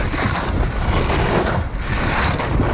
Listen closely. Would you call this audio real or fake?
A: real